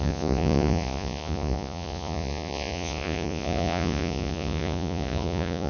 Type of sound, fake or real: fake